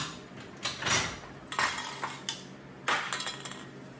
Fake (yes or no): no